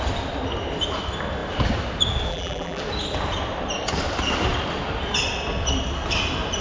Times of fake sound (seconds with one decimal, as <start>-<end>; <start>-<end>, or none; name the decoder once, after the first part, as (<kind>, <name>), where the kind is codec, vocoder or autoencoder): 2.3-2.8 (vocoder, BigVGAN v2)